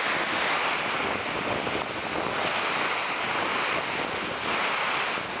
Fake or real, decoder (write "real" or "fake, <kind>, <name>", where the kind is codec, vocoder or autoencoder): real